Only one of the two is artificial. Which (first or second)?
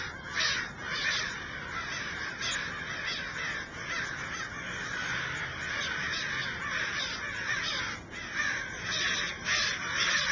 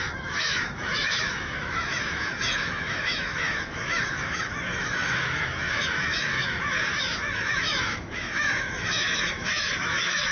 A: second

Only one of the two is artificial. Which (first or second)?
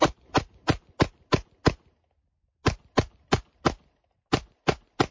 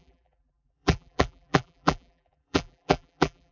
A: second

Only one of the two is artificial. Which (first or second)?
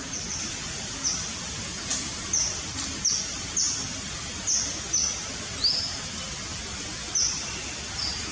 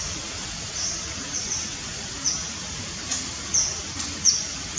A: second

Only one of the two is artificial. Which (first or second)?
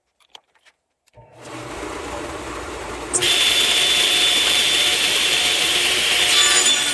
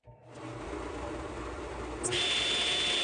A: first